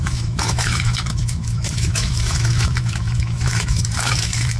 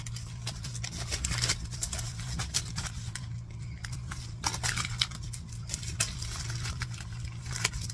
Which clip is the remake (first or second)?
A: first